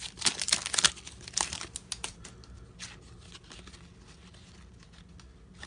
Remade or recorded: recorded